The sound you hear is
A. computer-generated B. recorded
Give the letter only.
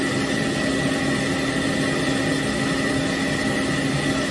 B